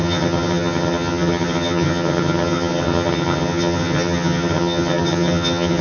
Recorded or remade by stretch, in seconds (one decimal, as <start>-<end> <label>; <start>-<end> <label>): 0.0-5.8 remade